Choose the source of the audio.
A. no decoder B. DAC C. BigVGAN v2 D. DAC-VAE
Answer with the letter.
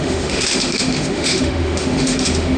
D